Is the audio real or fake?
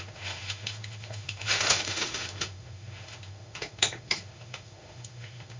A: fake